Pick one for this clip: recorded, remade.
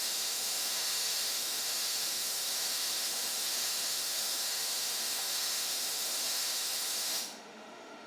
remade